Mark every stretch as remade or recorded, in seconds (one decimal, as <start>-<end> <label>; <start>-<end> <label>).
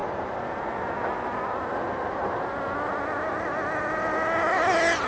0.0-5.1 recorded